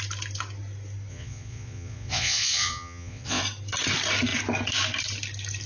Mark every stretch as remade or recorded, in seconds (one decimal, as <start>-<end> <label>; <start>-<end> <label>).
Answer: 0.0-1.1 recorded; 1.1-3.4 remade; 3.4-5.7 recorded